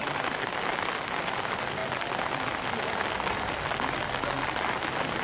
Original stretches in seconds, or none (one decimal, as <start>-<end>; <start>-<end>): 0.0-5.2